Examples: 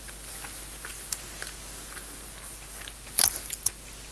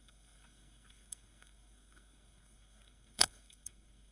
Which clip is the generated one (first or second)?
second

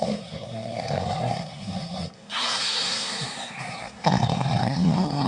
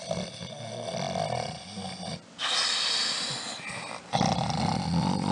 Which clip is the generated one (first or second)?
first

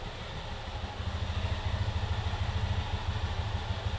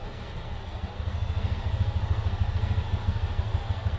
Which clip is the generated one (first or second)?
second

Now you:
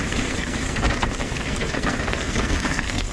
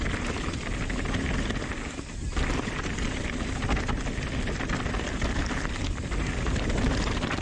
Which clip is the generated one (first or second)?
first